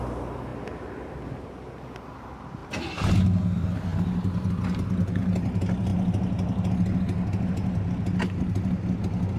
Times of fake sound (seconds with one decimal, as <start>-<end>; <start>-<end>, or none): 5.9-6.7